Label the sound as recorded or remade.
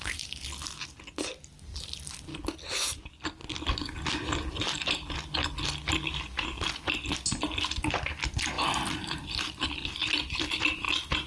recorded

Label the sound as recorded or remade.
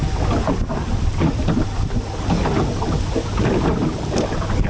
recorded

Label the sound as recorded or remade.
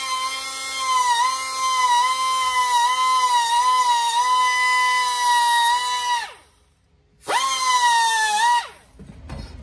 recorded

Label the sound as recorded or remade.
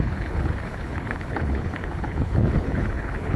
remade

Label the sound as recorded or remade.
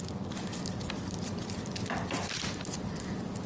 recorded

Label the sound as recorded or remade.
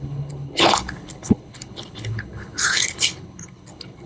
remade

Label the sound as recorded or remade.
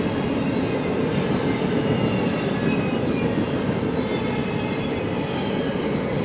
recorded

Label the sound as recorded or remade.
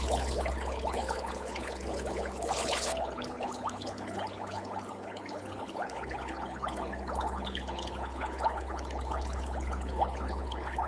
remade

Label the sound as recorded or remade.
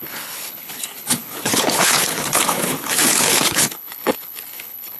remade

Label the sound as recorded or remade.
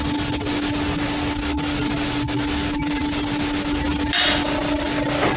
recorded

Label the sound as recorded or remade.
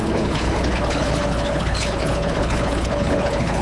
remade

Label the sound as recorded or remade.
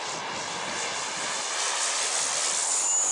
recorded